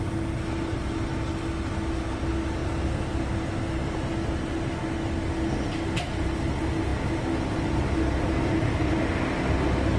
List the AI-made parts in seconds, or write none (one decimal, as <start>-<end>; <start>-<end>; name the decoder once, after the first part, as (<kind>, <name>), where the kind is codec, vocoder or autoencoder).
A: none